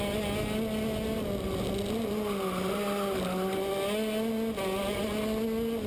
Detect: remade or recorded recorded